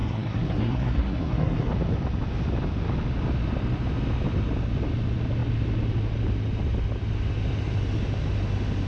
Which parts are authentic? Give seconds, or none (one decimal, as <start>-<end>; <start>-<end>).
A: 1.7-8.9